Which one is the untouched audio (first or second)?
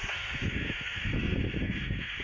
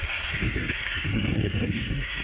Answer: first